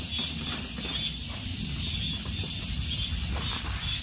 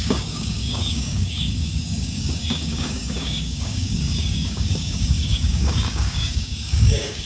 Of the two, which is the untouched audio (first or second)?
first